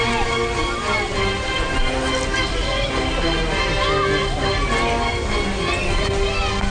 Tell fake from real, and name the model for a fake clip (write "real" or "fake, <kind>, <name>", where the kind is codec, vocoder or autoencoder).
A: real